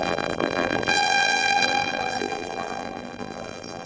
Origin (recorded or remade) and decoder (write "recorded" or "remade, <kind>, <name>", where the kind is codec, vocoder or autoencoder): remade, vocoder, BigVGAN v2